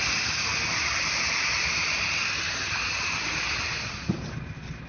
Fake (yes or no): no